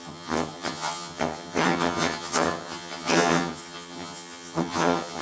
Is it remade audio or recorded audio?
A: remade